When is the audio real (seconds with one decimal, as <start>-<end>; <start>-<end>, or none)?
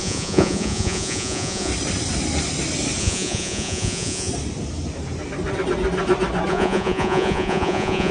1.7-3.0; 4.3-6.5